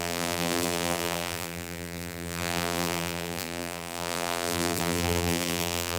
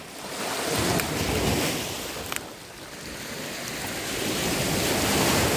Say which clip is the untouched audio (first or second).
second